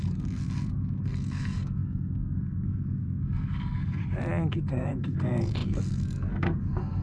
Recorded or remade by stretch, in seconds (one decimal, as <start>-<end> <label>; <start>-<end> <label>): 0.0-4.0 remade; 4.0-4.5 recorded; 4.5-7.0 remade